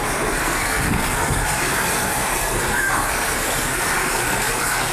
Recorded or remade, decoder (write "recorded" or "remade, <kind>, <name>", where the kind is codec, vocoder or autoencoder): remade, codec, SNAC